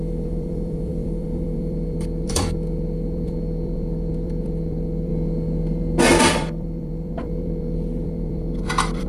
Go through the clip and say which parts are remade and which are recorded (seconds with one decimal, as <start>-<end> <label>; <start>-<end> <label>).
0.0-5.1 remade; 5.1-6.2 recorded; 6.2-9.1 remade